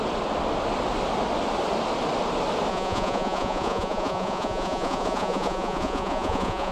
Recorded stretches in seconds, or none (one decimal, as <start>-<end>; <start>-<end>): 0.0-2.7